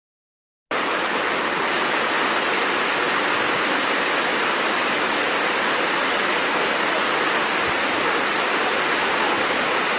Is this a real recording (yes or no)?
yes